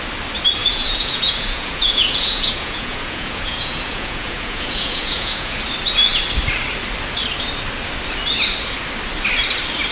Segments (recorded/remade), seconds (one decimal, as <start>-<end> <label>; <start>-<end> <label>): 0.0-0.6 recorded; 0.6-5.6 remade; 5.6-9.9 recorded